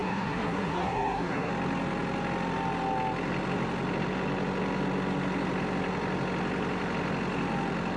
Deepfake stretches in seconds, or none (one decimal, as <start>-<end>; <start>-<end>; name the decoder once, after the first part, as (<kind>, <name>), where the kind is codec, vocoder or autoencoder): 0.0-1.5 (codec, SNAC)